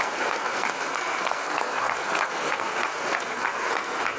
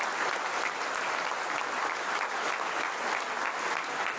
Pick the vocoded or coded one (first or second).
first